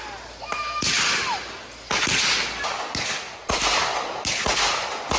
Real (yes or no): yes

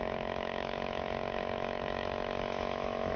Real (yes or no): no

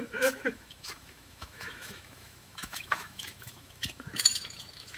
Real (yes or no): no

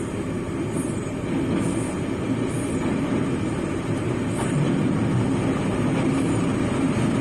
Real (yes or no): yes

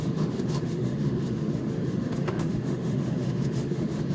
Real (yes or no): no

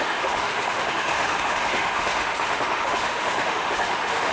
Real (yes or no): no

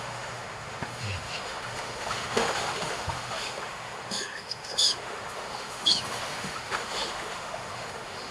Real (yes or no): no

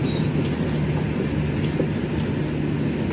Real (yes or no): yes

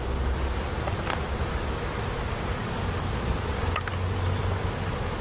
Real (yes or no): yes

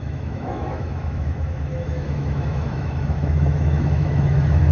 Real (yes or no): no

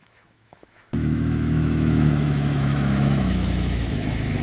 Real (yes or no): no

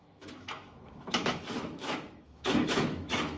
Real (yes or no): no